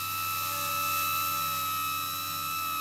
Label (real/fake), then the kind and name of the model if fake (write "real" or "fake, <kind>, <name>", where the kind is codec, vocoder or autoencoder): real